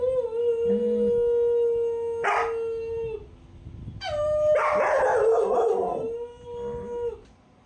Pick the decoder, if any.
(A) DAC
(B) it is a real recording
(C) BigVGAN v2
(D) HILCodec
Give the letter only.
B